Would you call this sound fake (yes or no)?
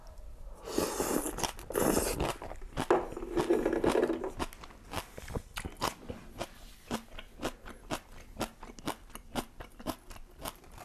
no